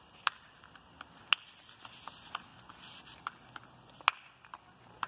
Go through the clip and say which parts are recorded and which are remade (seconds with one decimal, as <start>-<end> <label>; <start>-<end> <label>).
0.0-5.1 recorded